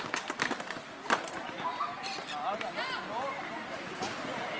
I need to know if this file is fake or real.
real